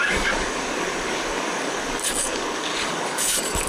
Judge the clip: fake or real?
fake